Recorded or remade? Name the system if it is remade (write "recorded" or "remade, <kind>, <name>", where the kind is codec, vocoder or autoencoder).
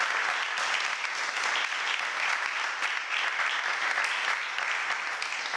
recorded